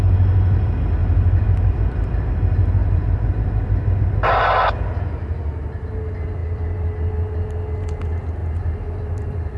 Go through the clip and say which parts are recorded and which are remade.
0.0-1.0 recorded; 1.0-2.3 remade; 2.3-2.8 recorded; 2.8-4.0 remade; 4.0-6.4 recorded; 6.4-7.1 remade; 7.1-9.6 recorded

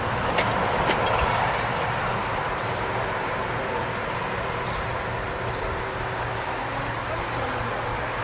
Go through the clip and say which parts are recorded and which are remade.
0.0-2.2 recorded; 2.2-6.3 remade; 6.3-8.2 recorded

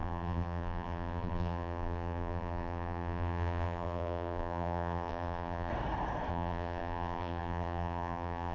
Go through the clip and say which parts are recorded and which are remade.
0.0-5.7 remade; 5.7-6.3 recorded; 6.3-8.5 remade

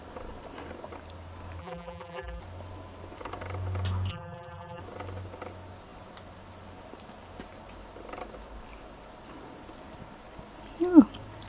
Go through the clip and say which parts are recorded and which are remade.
0.0-1.6 recorded; 1.6-2.4 remade; 2.4-4.1 recorded; 4.1-4.8 remade; 4.8-11.5 recorded

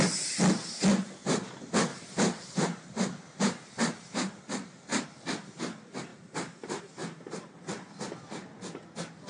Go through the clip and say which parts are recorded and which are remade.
0.0-1.9 recorded; 1.9-4.4 remade; 4.4-6.1 recorded; 6.1-6.8 remade; 6.8-9.3 recorded

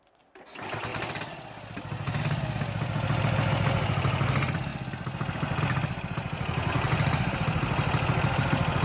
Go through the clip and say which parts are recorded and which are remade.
0.0-8.8 recorded